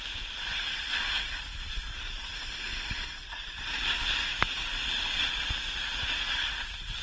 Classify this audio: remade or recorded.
recorded